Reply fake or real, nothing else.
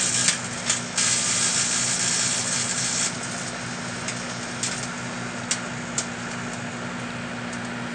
real